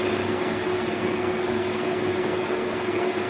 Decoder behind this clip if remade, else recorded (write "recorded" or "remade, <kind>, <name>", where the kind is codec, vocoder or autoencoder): remade, codec, SNAC